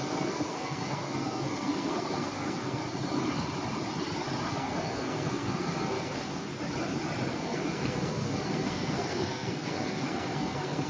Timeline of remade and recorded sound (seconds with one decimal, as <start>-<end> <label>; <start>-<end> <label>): 0.0-2.8 remade; 2.8-4.5 recorded; 4.5-6.5 remade; 6.5-7.3 recorded; 7.3-10.9 remade